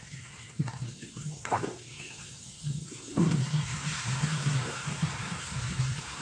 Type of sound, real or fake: fake